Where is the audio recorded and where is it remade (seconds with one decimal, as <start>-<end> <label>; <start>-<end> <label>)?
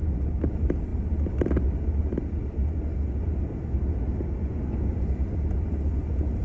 0.0-6.4 recorded